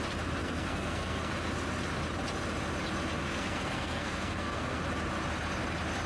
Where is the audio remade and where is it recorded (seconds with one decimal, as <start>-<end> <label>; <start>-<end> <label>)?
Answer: 0.0-0.4 recorded; 0.4-1.3 remade; 1.3-3.2 recorded; 3.2-4.8 remade; 4.8-6.1 recorded